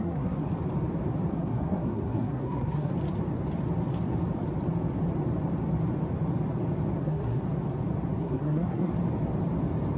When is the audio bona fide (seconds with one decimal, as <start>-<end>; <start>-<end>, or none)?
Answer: 0.5-1.3; 2.9-7.0; 7.4-8.2; 8.9-10.0